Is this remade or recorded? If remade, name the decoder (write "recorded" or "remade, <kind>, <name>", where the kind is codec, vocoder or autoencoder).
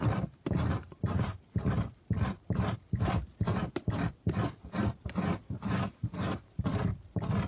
remade, vocoder, BigVGAN v2